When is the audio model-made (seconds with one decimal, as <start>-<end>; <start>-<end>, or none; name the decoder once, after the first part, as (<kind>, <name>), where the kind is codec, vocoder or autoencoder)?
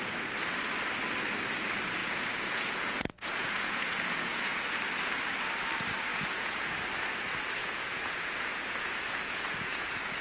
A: 2.0-4.5 (vocoder, Vocos); 6.1-6.8; 7.6-10.2